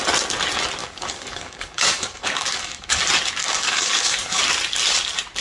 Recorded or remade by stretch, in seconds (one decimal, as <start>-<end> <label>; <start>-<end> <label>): 0.0-0.8 recorded; 0.8-3.0 remade; 3.0-3.4 recorded; 3.4-4.4 remade; 4.4-5.4 recorded